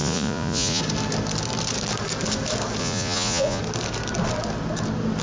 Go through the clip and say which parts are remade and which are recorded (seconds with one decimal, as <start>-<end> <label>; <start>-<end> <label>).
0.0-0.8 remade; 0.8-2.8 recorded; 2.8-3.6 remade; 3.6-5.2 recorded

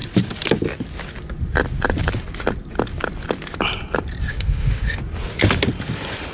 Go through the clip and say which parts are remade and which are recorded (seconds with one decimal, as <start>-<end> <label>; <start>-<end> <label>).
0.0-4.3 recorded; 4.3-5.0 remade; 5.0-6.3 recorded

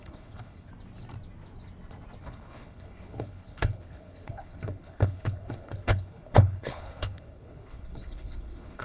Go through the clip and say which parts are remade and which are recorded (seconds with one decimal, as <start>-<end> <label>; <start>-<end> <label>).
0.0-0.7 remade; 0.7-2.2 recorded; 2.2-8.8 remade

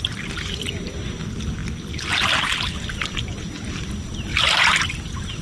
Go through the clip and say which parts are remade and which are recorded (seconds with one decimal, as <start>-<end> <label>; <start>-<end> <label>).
0.0-5.4 recorded

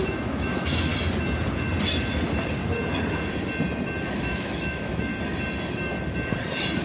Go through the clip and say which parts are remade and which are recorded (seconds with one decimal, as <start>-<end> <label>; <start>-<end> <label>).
0.0-0.9 remade; 0.9-4.0 recorded; 4.0-5.1 remade; 5.1-6.8 recorded